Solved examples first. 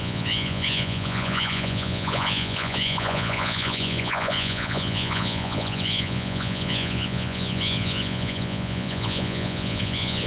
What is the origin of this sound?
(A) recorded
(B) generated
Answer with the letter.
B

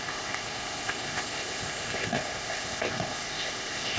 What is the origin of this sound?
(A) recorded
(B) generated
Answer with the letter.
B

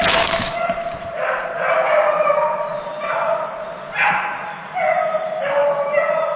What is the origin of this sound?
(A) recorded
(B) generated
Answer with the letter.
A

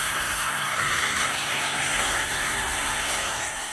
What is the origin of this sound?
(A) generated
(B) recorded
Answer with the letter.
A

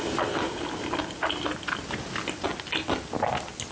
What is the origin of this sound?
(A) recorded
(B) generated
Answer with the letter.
A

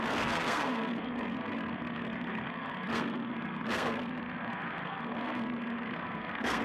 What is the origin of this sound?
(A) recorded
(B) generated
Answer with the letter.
B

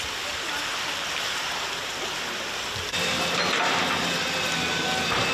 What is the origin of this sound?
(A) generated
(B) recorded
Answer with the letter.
B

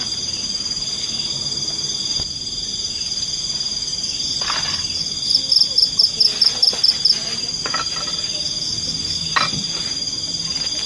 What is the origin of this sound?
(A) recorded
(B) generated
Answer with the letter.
A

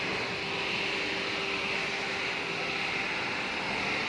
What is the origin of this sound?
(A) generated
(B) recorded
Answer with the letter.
B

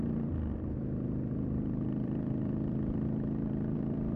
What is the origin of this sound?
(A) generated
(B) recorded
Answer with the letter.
A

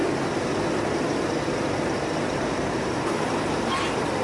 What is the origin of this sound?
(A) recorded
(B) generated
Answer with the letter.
B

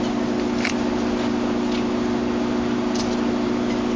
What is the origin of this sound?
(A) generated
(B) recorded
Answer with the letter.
B